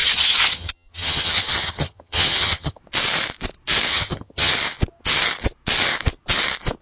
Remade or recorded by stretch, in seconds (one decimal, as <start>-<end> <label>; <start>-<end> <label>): 0.0-2.8 remade; 2.8-3.9 recorded; 3.9-4.5 remade; 4.5-6.8 recorded